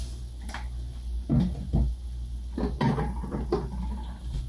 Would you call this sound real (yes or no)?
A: yes